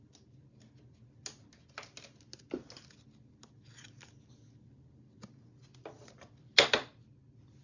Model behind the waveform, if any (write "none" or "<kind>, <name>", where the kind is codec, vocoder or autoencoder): none